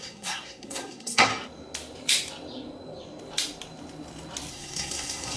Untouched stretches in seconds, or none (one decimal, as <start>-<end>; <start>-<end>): 1.3-4.5

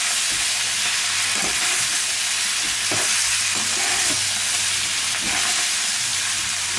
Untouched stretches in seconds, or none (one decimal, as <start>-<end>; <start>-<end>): 0.0-6.8

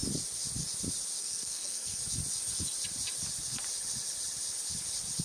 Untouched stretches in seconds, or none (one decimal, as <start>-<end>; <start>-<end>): 0.0-1.2; 2.0-5.2

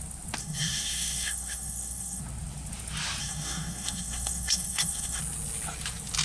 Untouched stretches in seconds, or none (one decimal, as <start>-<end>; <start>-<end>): 0.0-0.4; 2.2-3.2; 5.2-6.2

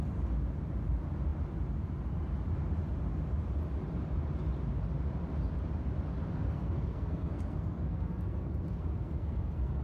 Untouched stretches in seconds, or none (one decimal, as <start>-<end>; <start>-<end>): 0.0-6.3

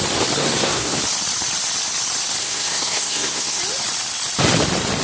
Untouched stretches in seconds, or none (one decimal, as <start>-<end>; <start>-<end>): 0.0-0.4; 1.0-2.4; 3.6-5.0

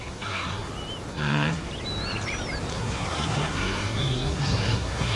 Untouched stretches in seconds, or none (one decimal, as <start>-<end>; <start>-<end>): 0.7-1.1; 1.7-2.7